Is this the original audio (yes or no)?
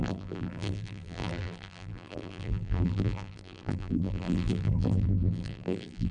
no